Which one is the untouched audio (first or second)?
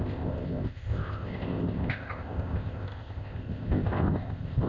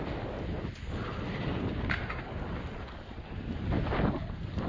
second